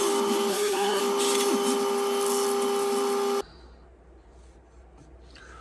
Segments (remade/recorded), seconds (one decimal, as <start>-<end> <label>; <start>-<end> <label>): 0.0-0.5 recorded; 0.5-1.0 remade; 1.0-5.6 recorded